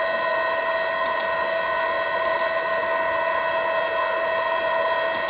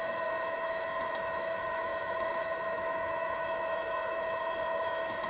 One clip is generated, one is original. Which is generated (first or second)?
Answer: second